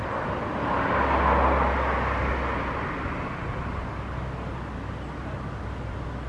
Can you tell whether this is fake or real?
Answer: real